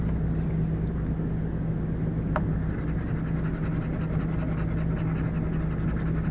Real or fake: real